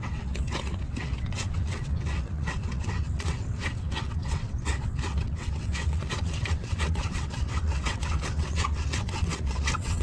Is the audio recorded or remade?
remade